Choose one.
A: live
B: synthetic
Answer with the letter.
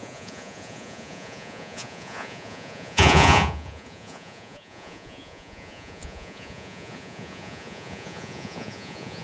B